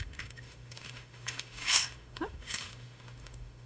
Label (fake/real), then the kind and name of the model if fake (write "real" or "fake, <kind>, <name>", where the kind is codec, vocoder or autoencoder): fake, autoencoder, DAC-VAE